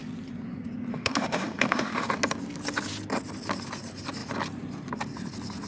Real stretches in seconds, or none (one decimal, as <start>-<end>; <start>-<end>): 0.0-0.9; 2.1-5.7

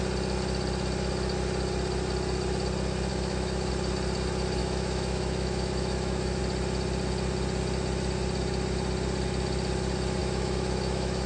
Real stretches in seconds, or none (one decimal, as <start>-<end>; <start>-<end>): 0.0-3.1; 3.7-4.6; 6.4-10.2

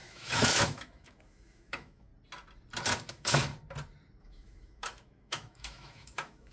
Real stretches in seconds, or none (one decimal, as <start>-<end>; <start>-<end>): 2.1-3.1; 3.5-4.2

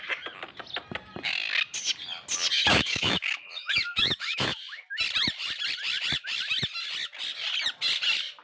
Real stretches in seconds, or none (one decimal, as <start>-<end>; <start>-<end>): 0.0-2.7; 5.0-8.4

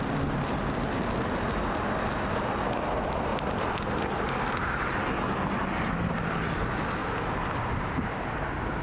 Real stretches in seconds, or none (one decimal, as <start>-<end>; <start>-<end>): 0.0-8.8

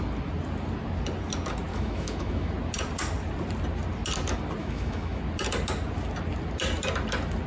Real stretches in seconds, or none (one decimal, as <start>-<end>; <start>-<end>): 0.0-1.7; 2.5-4.6; 5.2-7.5

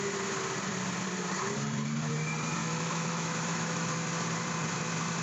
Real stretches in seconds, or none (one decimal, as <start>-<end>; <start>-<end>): 0.0-2.6; 3.9-5.2